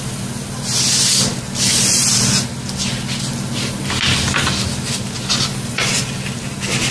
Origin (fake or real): real